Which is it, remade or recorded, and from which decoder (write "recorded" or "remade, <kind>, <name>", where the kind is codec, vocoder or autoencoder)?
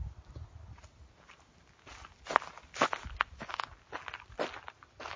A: recorded